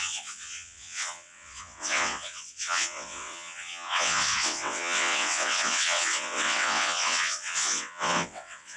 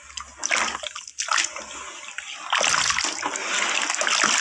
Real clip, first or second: second